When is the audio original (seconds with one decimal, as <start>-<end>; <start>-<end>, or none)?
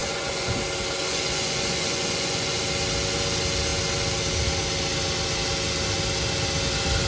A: 0.6-1.0; 2.6-7.1